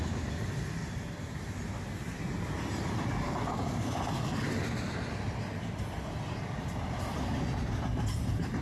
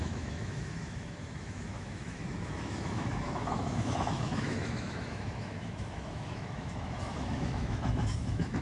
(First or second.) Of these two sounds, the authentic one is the first